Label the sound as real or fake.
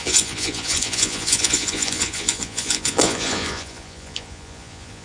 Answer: fake